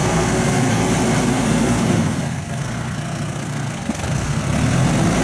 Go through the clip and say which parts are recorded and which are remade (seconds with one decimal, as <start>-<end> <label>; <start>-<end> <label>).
0.0-0.8 remade; 0.8-1.3 recorded; 1.3-4.4 remade; 4.4-5.2 recorded